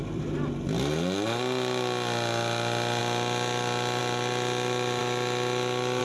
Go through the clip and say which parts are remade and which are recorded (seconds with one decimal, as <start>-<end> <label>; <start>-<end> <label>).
0.0-6.0 recorded